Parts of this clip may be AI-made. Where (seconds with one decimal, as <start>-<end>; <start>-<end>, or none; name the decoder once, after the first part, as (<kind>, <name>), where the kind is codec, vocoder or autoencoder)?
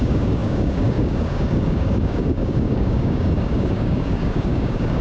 0.0-5.0 (codec, DAC)